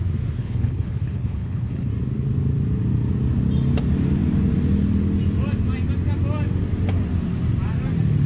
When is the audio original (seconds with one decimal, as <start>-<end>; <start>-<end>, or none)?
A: 0.0-0.4; 1.9-8.3